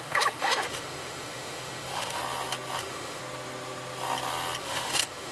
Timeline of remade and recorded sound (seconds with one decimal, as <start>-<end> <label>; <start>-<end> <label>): 0.0-2.2 remade; 2.2-2.8 recorded; 2.8-3.2 remade; 3.2-4.6 recorded; 4.6-5.3 remade